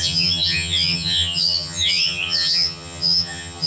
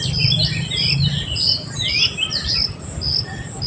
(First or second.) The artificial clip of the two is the first